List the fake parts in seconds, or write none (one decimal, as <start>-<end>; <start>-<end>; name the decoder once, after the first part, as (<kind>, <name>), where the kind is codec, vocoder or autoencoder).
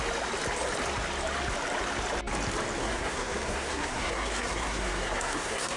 2.8-5.8 (codec, SNAC)